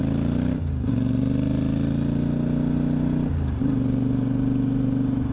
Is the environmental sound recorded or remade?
recorded